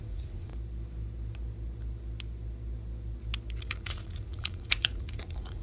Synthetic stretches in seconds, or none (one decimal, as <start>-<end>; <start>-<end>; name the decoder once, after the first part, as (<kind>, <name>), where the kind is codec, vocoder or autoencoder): 0.0-0.5 (vocoder, Vocos); 3.6-5.6